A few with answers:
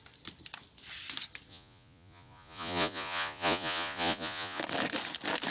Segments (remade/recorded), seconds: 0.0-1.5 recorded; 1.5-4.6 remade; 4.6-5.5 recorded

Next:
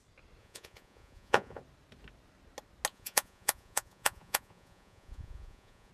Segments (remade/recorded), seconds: 0.0-0.4 recorded; 0.4-1.6 remade; 1.6-2.9 recorded; 2.9-5.9 remade

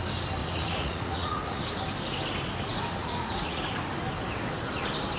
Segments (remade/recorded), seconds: 0.0-0.4 recorded; 0.4-1.6 remade; 1.6-3.0 recorded; 3.0-3.6 remade; 3.6-5.2 recorded

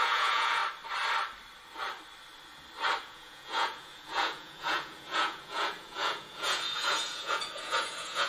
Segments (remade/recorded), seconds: 0.0-0.6 remade; 0.6-3.0 recorded; 3.0-8.3 remade

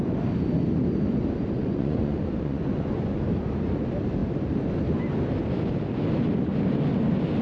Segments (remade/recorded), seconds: 0.0-1.6 recorded; 1.6-3.2 remade; 3.2-7.4 recorded

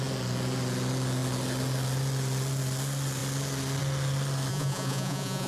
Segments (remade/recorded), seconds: 0.0-4.5 recorded; 4.5-5.5 remade

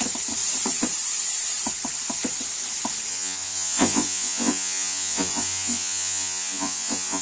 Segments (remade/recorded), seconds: 0.0-3.1 recorded; 3.1-7.2 remade